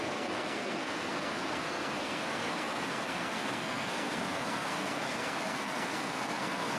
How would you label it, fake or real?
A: fake